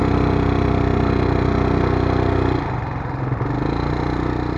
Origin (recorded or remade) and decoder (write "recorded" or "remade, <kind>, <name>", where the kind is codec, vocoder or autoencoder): recorded